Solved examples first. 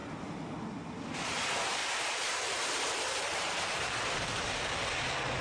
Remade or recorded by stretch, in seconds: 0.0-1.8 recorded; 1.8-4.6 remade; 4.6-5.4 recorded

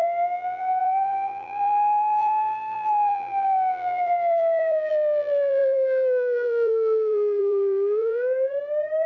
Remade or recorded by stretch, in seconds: 0.0-8.5 remade; 8.5-9.1 recorded

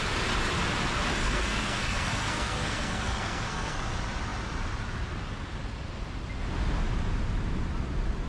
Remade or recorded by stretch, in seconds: 0.0-1.2 recorded; 1.2-3.9 remade; 3.9-8.3 recorded